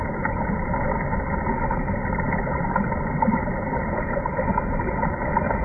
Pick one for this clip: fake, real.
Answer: real